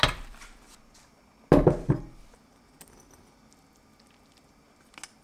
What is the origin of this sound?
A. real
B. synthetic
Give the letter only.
A